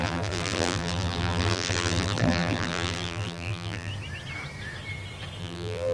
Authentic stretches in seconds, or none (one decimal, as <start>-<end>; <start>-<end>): 3.9-5.4